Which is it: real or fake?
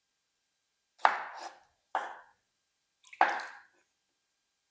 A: real